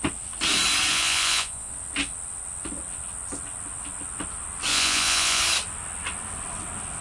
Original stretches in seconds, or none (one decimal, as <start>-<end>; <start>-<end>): 0.0-0.9; 1.7-4.7; 5.4-7.0